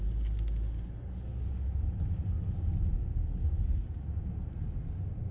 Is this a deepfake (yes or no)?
no